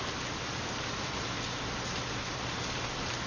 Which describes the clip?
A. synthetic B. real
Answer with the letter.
B